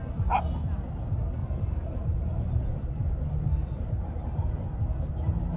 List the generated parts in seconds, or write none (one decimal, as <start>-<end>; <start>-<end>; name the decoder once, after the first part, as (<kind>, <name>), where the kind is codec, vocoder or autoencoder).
1.4-4.8 (vocoder, BigVGAN v2)